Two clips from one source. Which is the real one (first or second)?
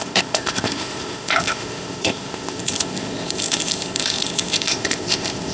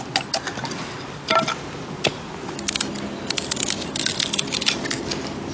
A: second